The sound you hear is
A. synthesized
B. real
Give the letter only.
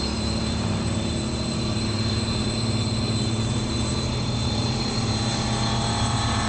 A